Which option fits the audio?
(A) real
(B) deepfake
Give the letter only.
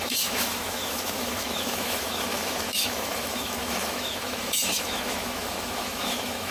B